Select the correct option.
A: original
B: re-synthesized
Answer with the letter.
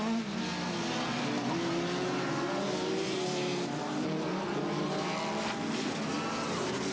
A